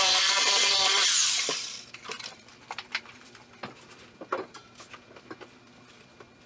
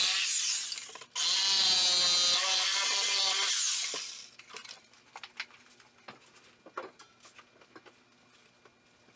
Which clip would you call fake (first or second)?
first